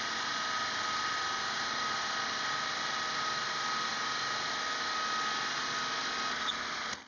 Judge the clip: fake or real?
real